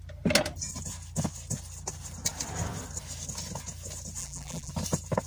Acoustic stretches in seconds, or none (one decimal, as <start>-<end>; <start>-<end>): 0.0-4.2; 4.7-5.3